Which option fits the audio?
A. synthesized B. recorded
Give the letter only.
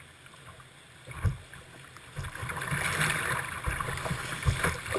B